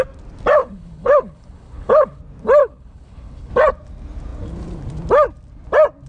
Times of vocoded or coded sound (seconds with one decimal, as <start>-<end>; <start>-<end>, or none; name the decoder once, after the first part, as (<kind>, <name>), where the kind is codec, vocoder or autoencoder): 0.6-2.2 (codec, HILCodec); 2.6-3.5